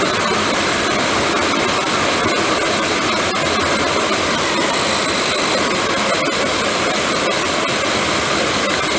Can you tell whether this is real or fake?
real